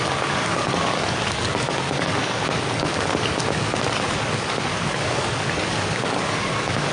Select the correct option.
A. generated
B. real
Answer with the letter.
A